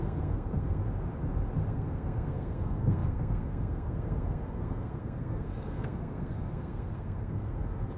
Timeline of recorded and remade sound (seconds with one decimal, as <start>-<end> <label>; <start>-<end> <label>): 0.0-0.8 remade; 0.8-1.7 recorded; 1.7-8.0 remade